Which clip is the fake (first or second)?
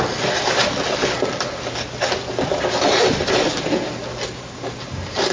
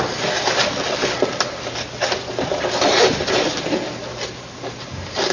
second